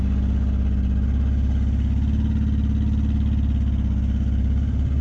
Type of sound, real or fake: real